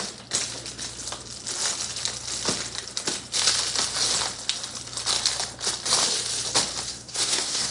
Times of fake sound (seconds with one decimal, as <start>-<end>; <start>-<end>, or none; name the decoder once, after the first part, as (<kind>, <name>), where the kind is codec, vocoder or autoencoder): 6.9-7.7 (codec, SNAC)

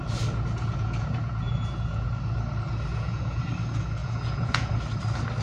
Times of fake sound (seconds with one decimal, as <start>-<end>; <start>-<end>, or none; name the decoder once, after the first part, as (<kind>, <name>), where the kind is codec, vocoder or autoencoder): 0.7-2.1 (vocoder, Vocos); 2.9-3.5; 4.0-4.7

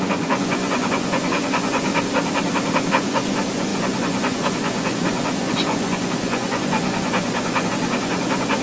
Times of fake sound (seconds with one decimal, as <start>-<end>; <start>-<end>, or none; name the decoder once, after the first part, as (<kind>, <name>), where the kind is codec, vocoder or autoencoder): 0.0-1.9 (vocoder, Vocos); 2.9-8.6

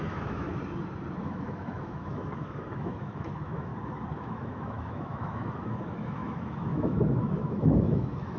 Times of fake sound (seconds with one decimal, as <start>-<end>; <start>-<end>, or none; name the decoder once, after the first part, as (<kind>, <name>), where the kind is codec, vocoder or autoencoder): 0.0-0.5 (autoencoder, DAC-VAE); 1.2-3.7; 4.2-8.4